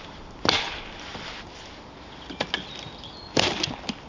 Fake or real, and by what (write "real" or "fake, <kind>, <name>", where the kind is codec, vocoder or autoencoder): real